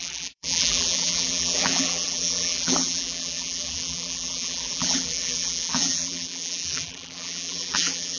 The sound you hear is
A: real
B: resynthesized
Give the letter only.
B